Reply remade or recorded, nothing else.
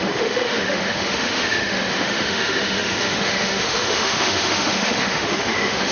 remade